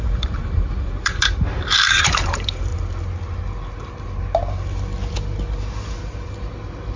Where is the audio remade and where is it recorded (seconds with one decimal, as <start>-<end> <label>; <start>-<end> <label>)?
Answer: 0.0-2.7 remade; 2.7-7.0 recorded